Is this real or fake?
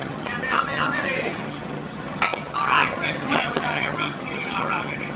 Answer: fake